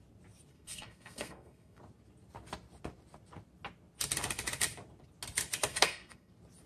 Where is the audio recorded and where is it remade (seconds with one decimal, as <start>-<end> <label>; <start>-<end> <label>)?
0.0-0.5 recorded; 0.5-1.8 remade; 1.8-5.7 recorded; 5.7-6.3 remade; 6.3-6.7 recorded